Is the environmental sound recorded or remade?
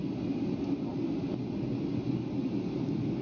recorded